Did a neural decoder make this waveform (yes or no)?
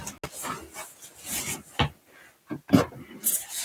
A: no